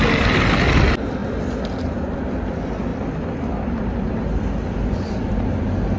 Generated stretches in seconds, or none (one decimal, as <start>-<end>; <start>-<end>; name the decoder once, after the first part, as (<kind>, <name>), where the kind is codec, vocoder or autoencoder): 0.0-1.2 (vocoder, BigVGAN v2); 1.9-6.0